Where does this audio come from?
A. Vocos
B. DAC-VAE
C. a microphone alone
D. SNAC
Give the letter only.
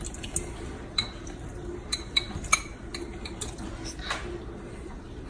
C